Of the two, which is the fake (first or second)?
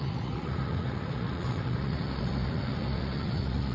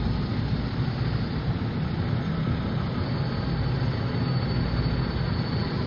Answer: first